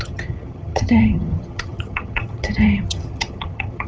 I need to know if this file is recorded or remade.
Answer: remade